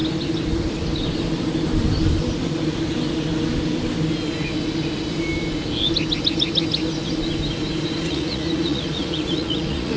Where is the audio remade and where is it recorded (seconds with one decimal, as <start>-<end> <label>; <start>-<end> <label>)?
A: 0.0-8.0 recorded; 8.0-10.0 remade